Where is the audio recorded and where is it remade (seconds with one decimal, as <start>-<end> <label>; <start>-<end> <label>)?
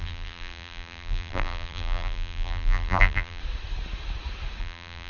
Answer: 0.0-3.4 remade; 3.4-4.6 recorded; 4.6-5.1 remade